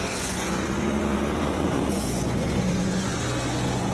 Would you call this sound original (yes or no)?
no